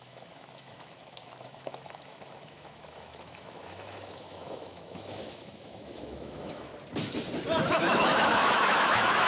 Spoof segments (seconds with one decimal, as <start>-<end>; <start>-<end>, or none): 0.0-6.7; 7.7-9.3